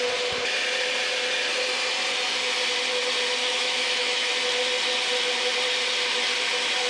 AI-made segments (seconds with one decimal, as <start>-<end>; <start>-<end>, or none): 3.4-4.3